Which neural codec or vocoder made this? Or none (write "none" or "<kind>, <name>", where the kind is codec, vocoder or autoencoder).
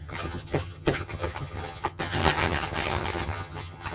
vocoder, HiFi-GAN